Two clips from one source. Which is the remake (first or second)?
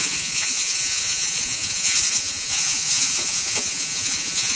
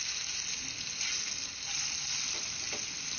first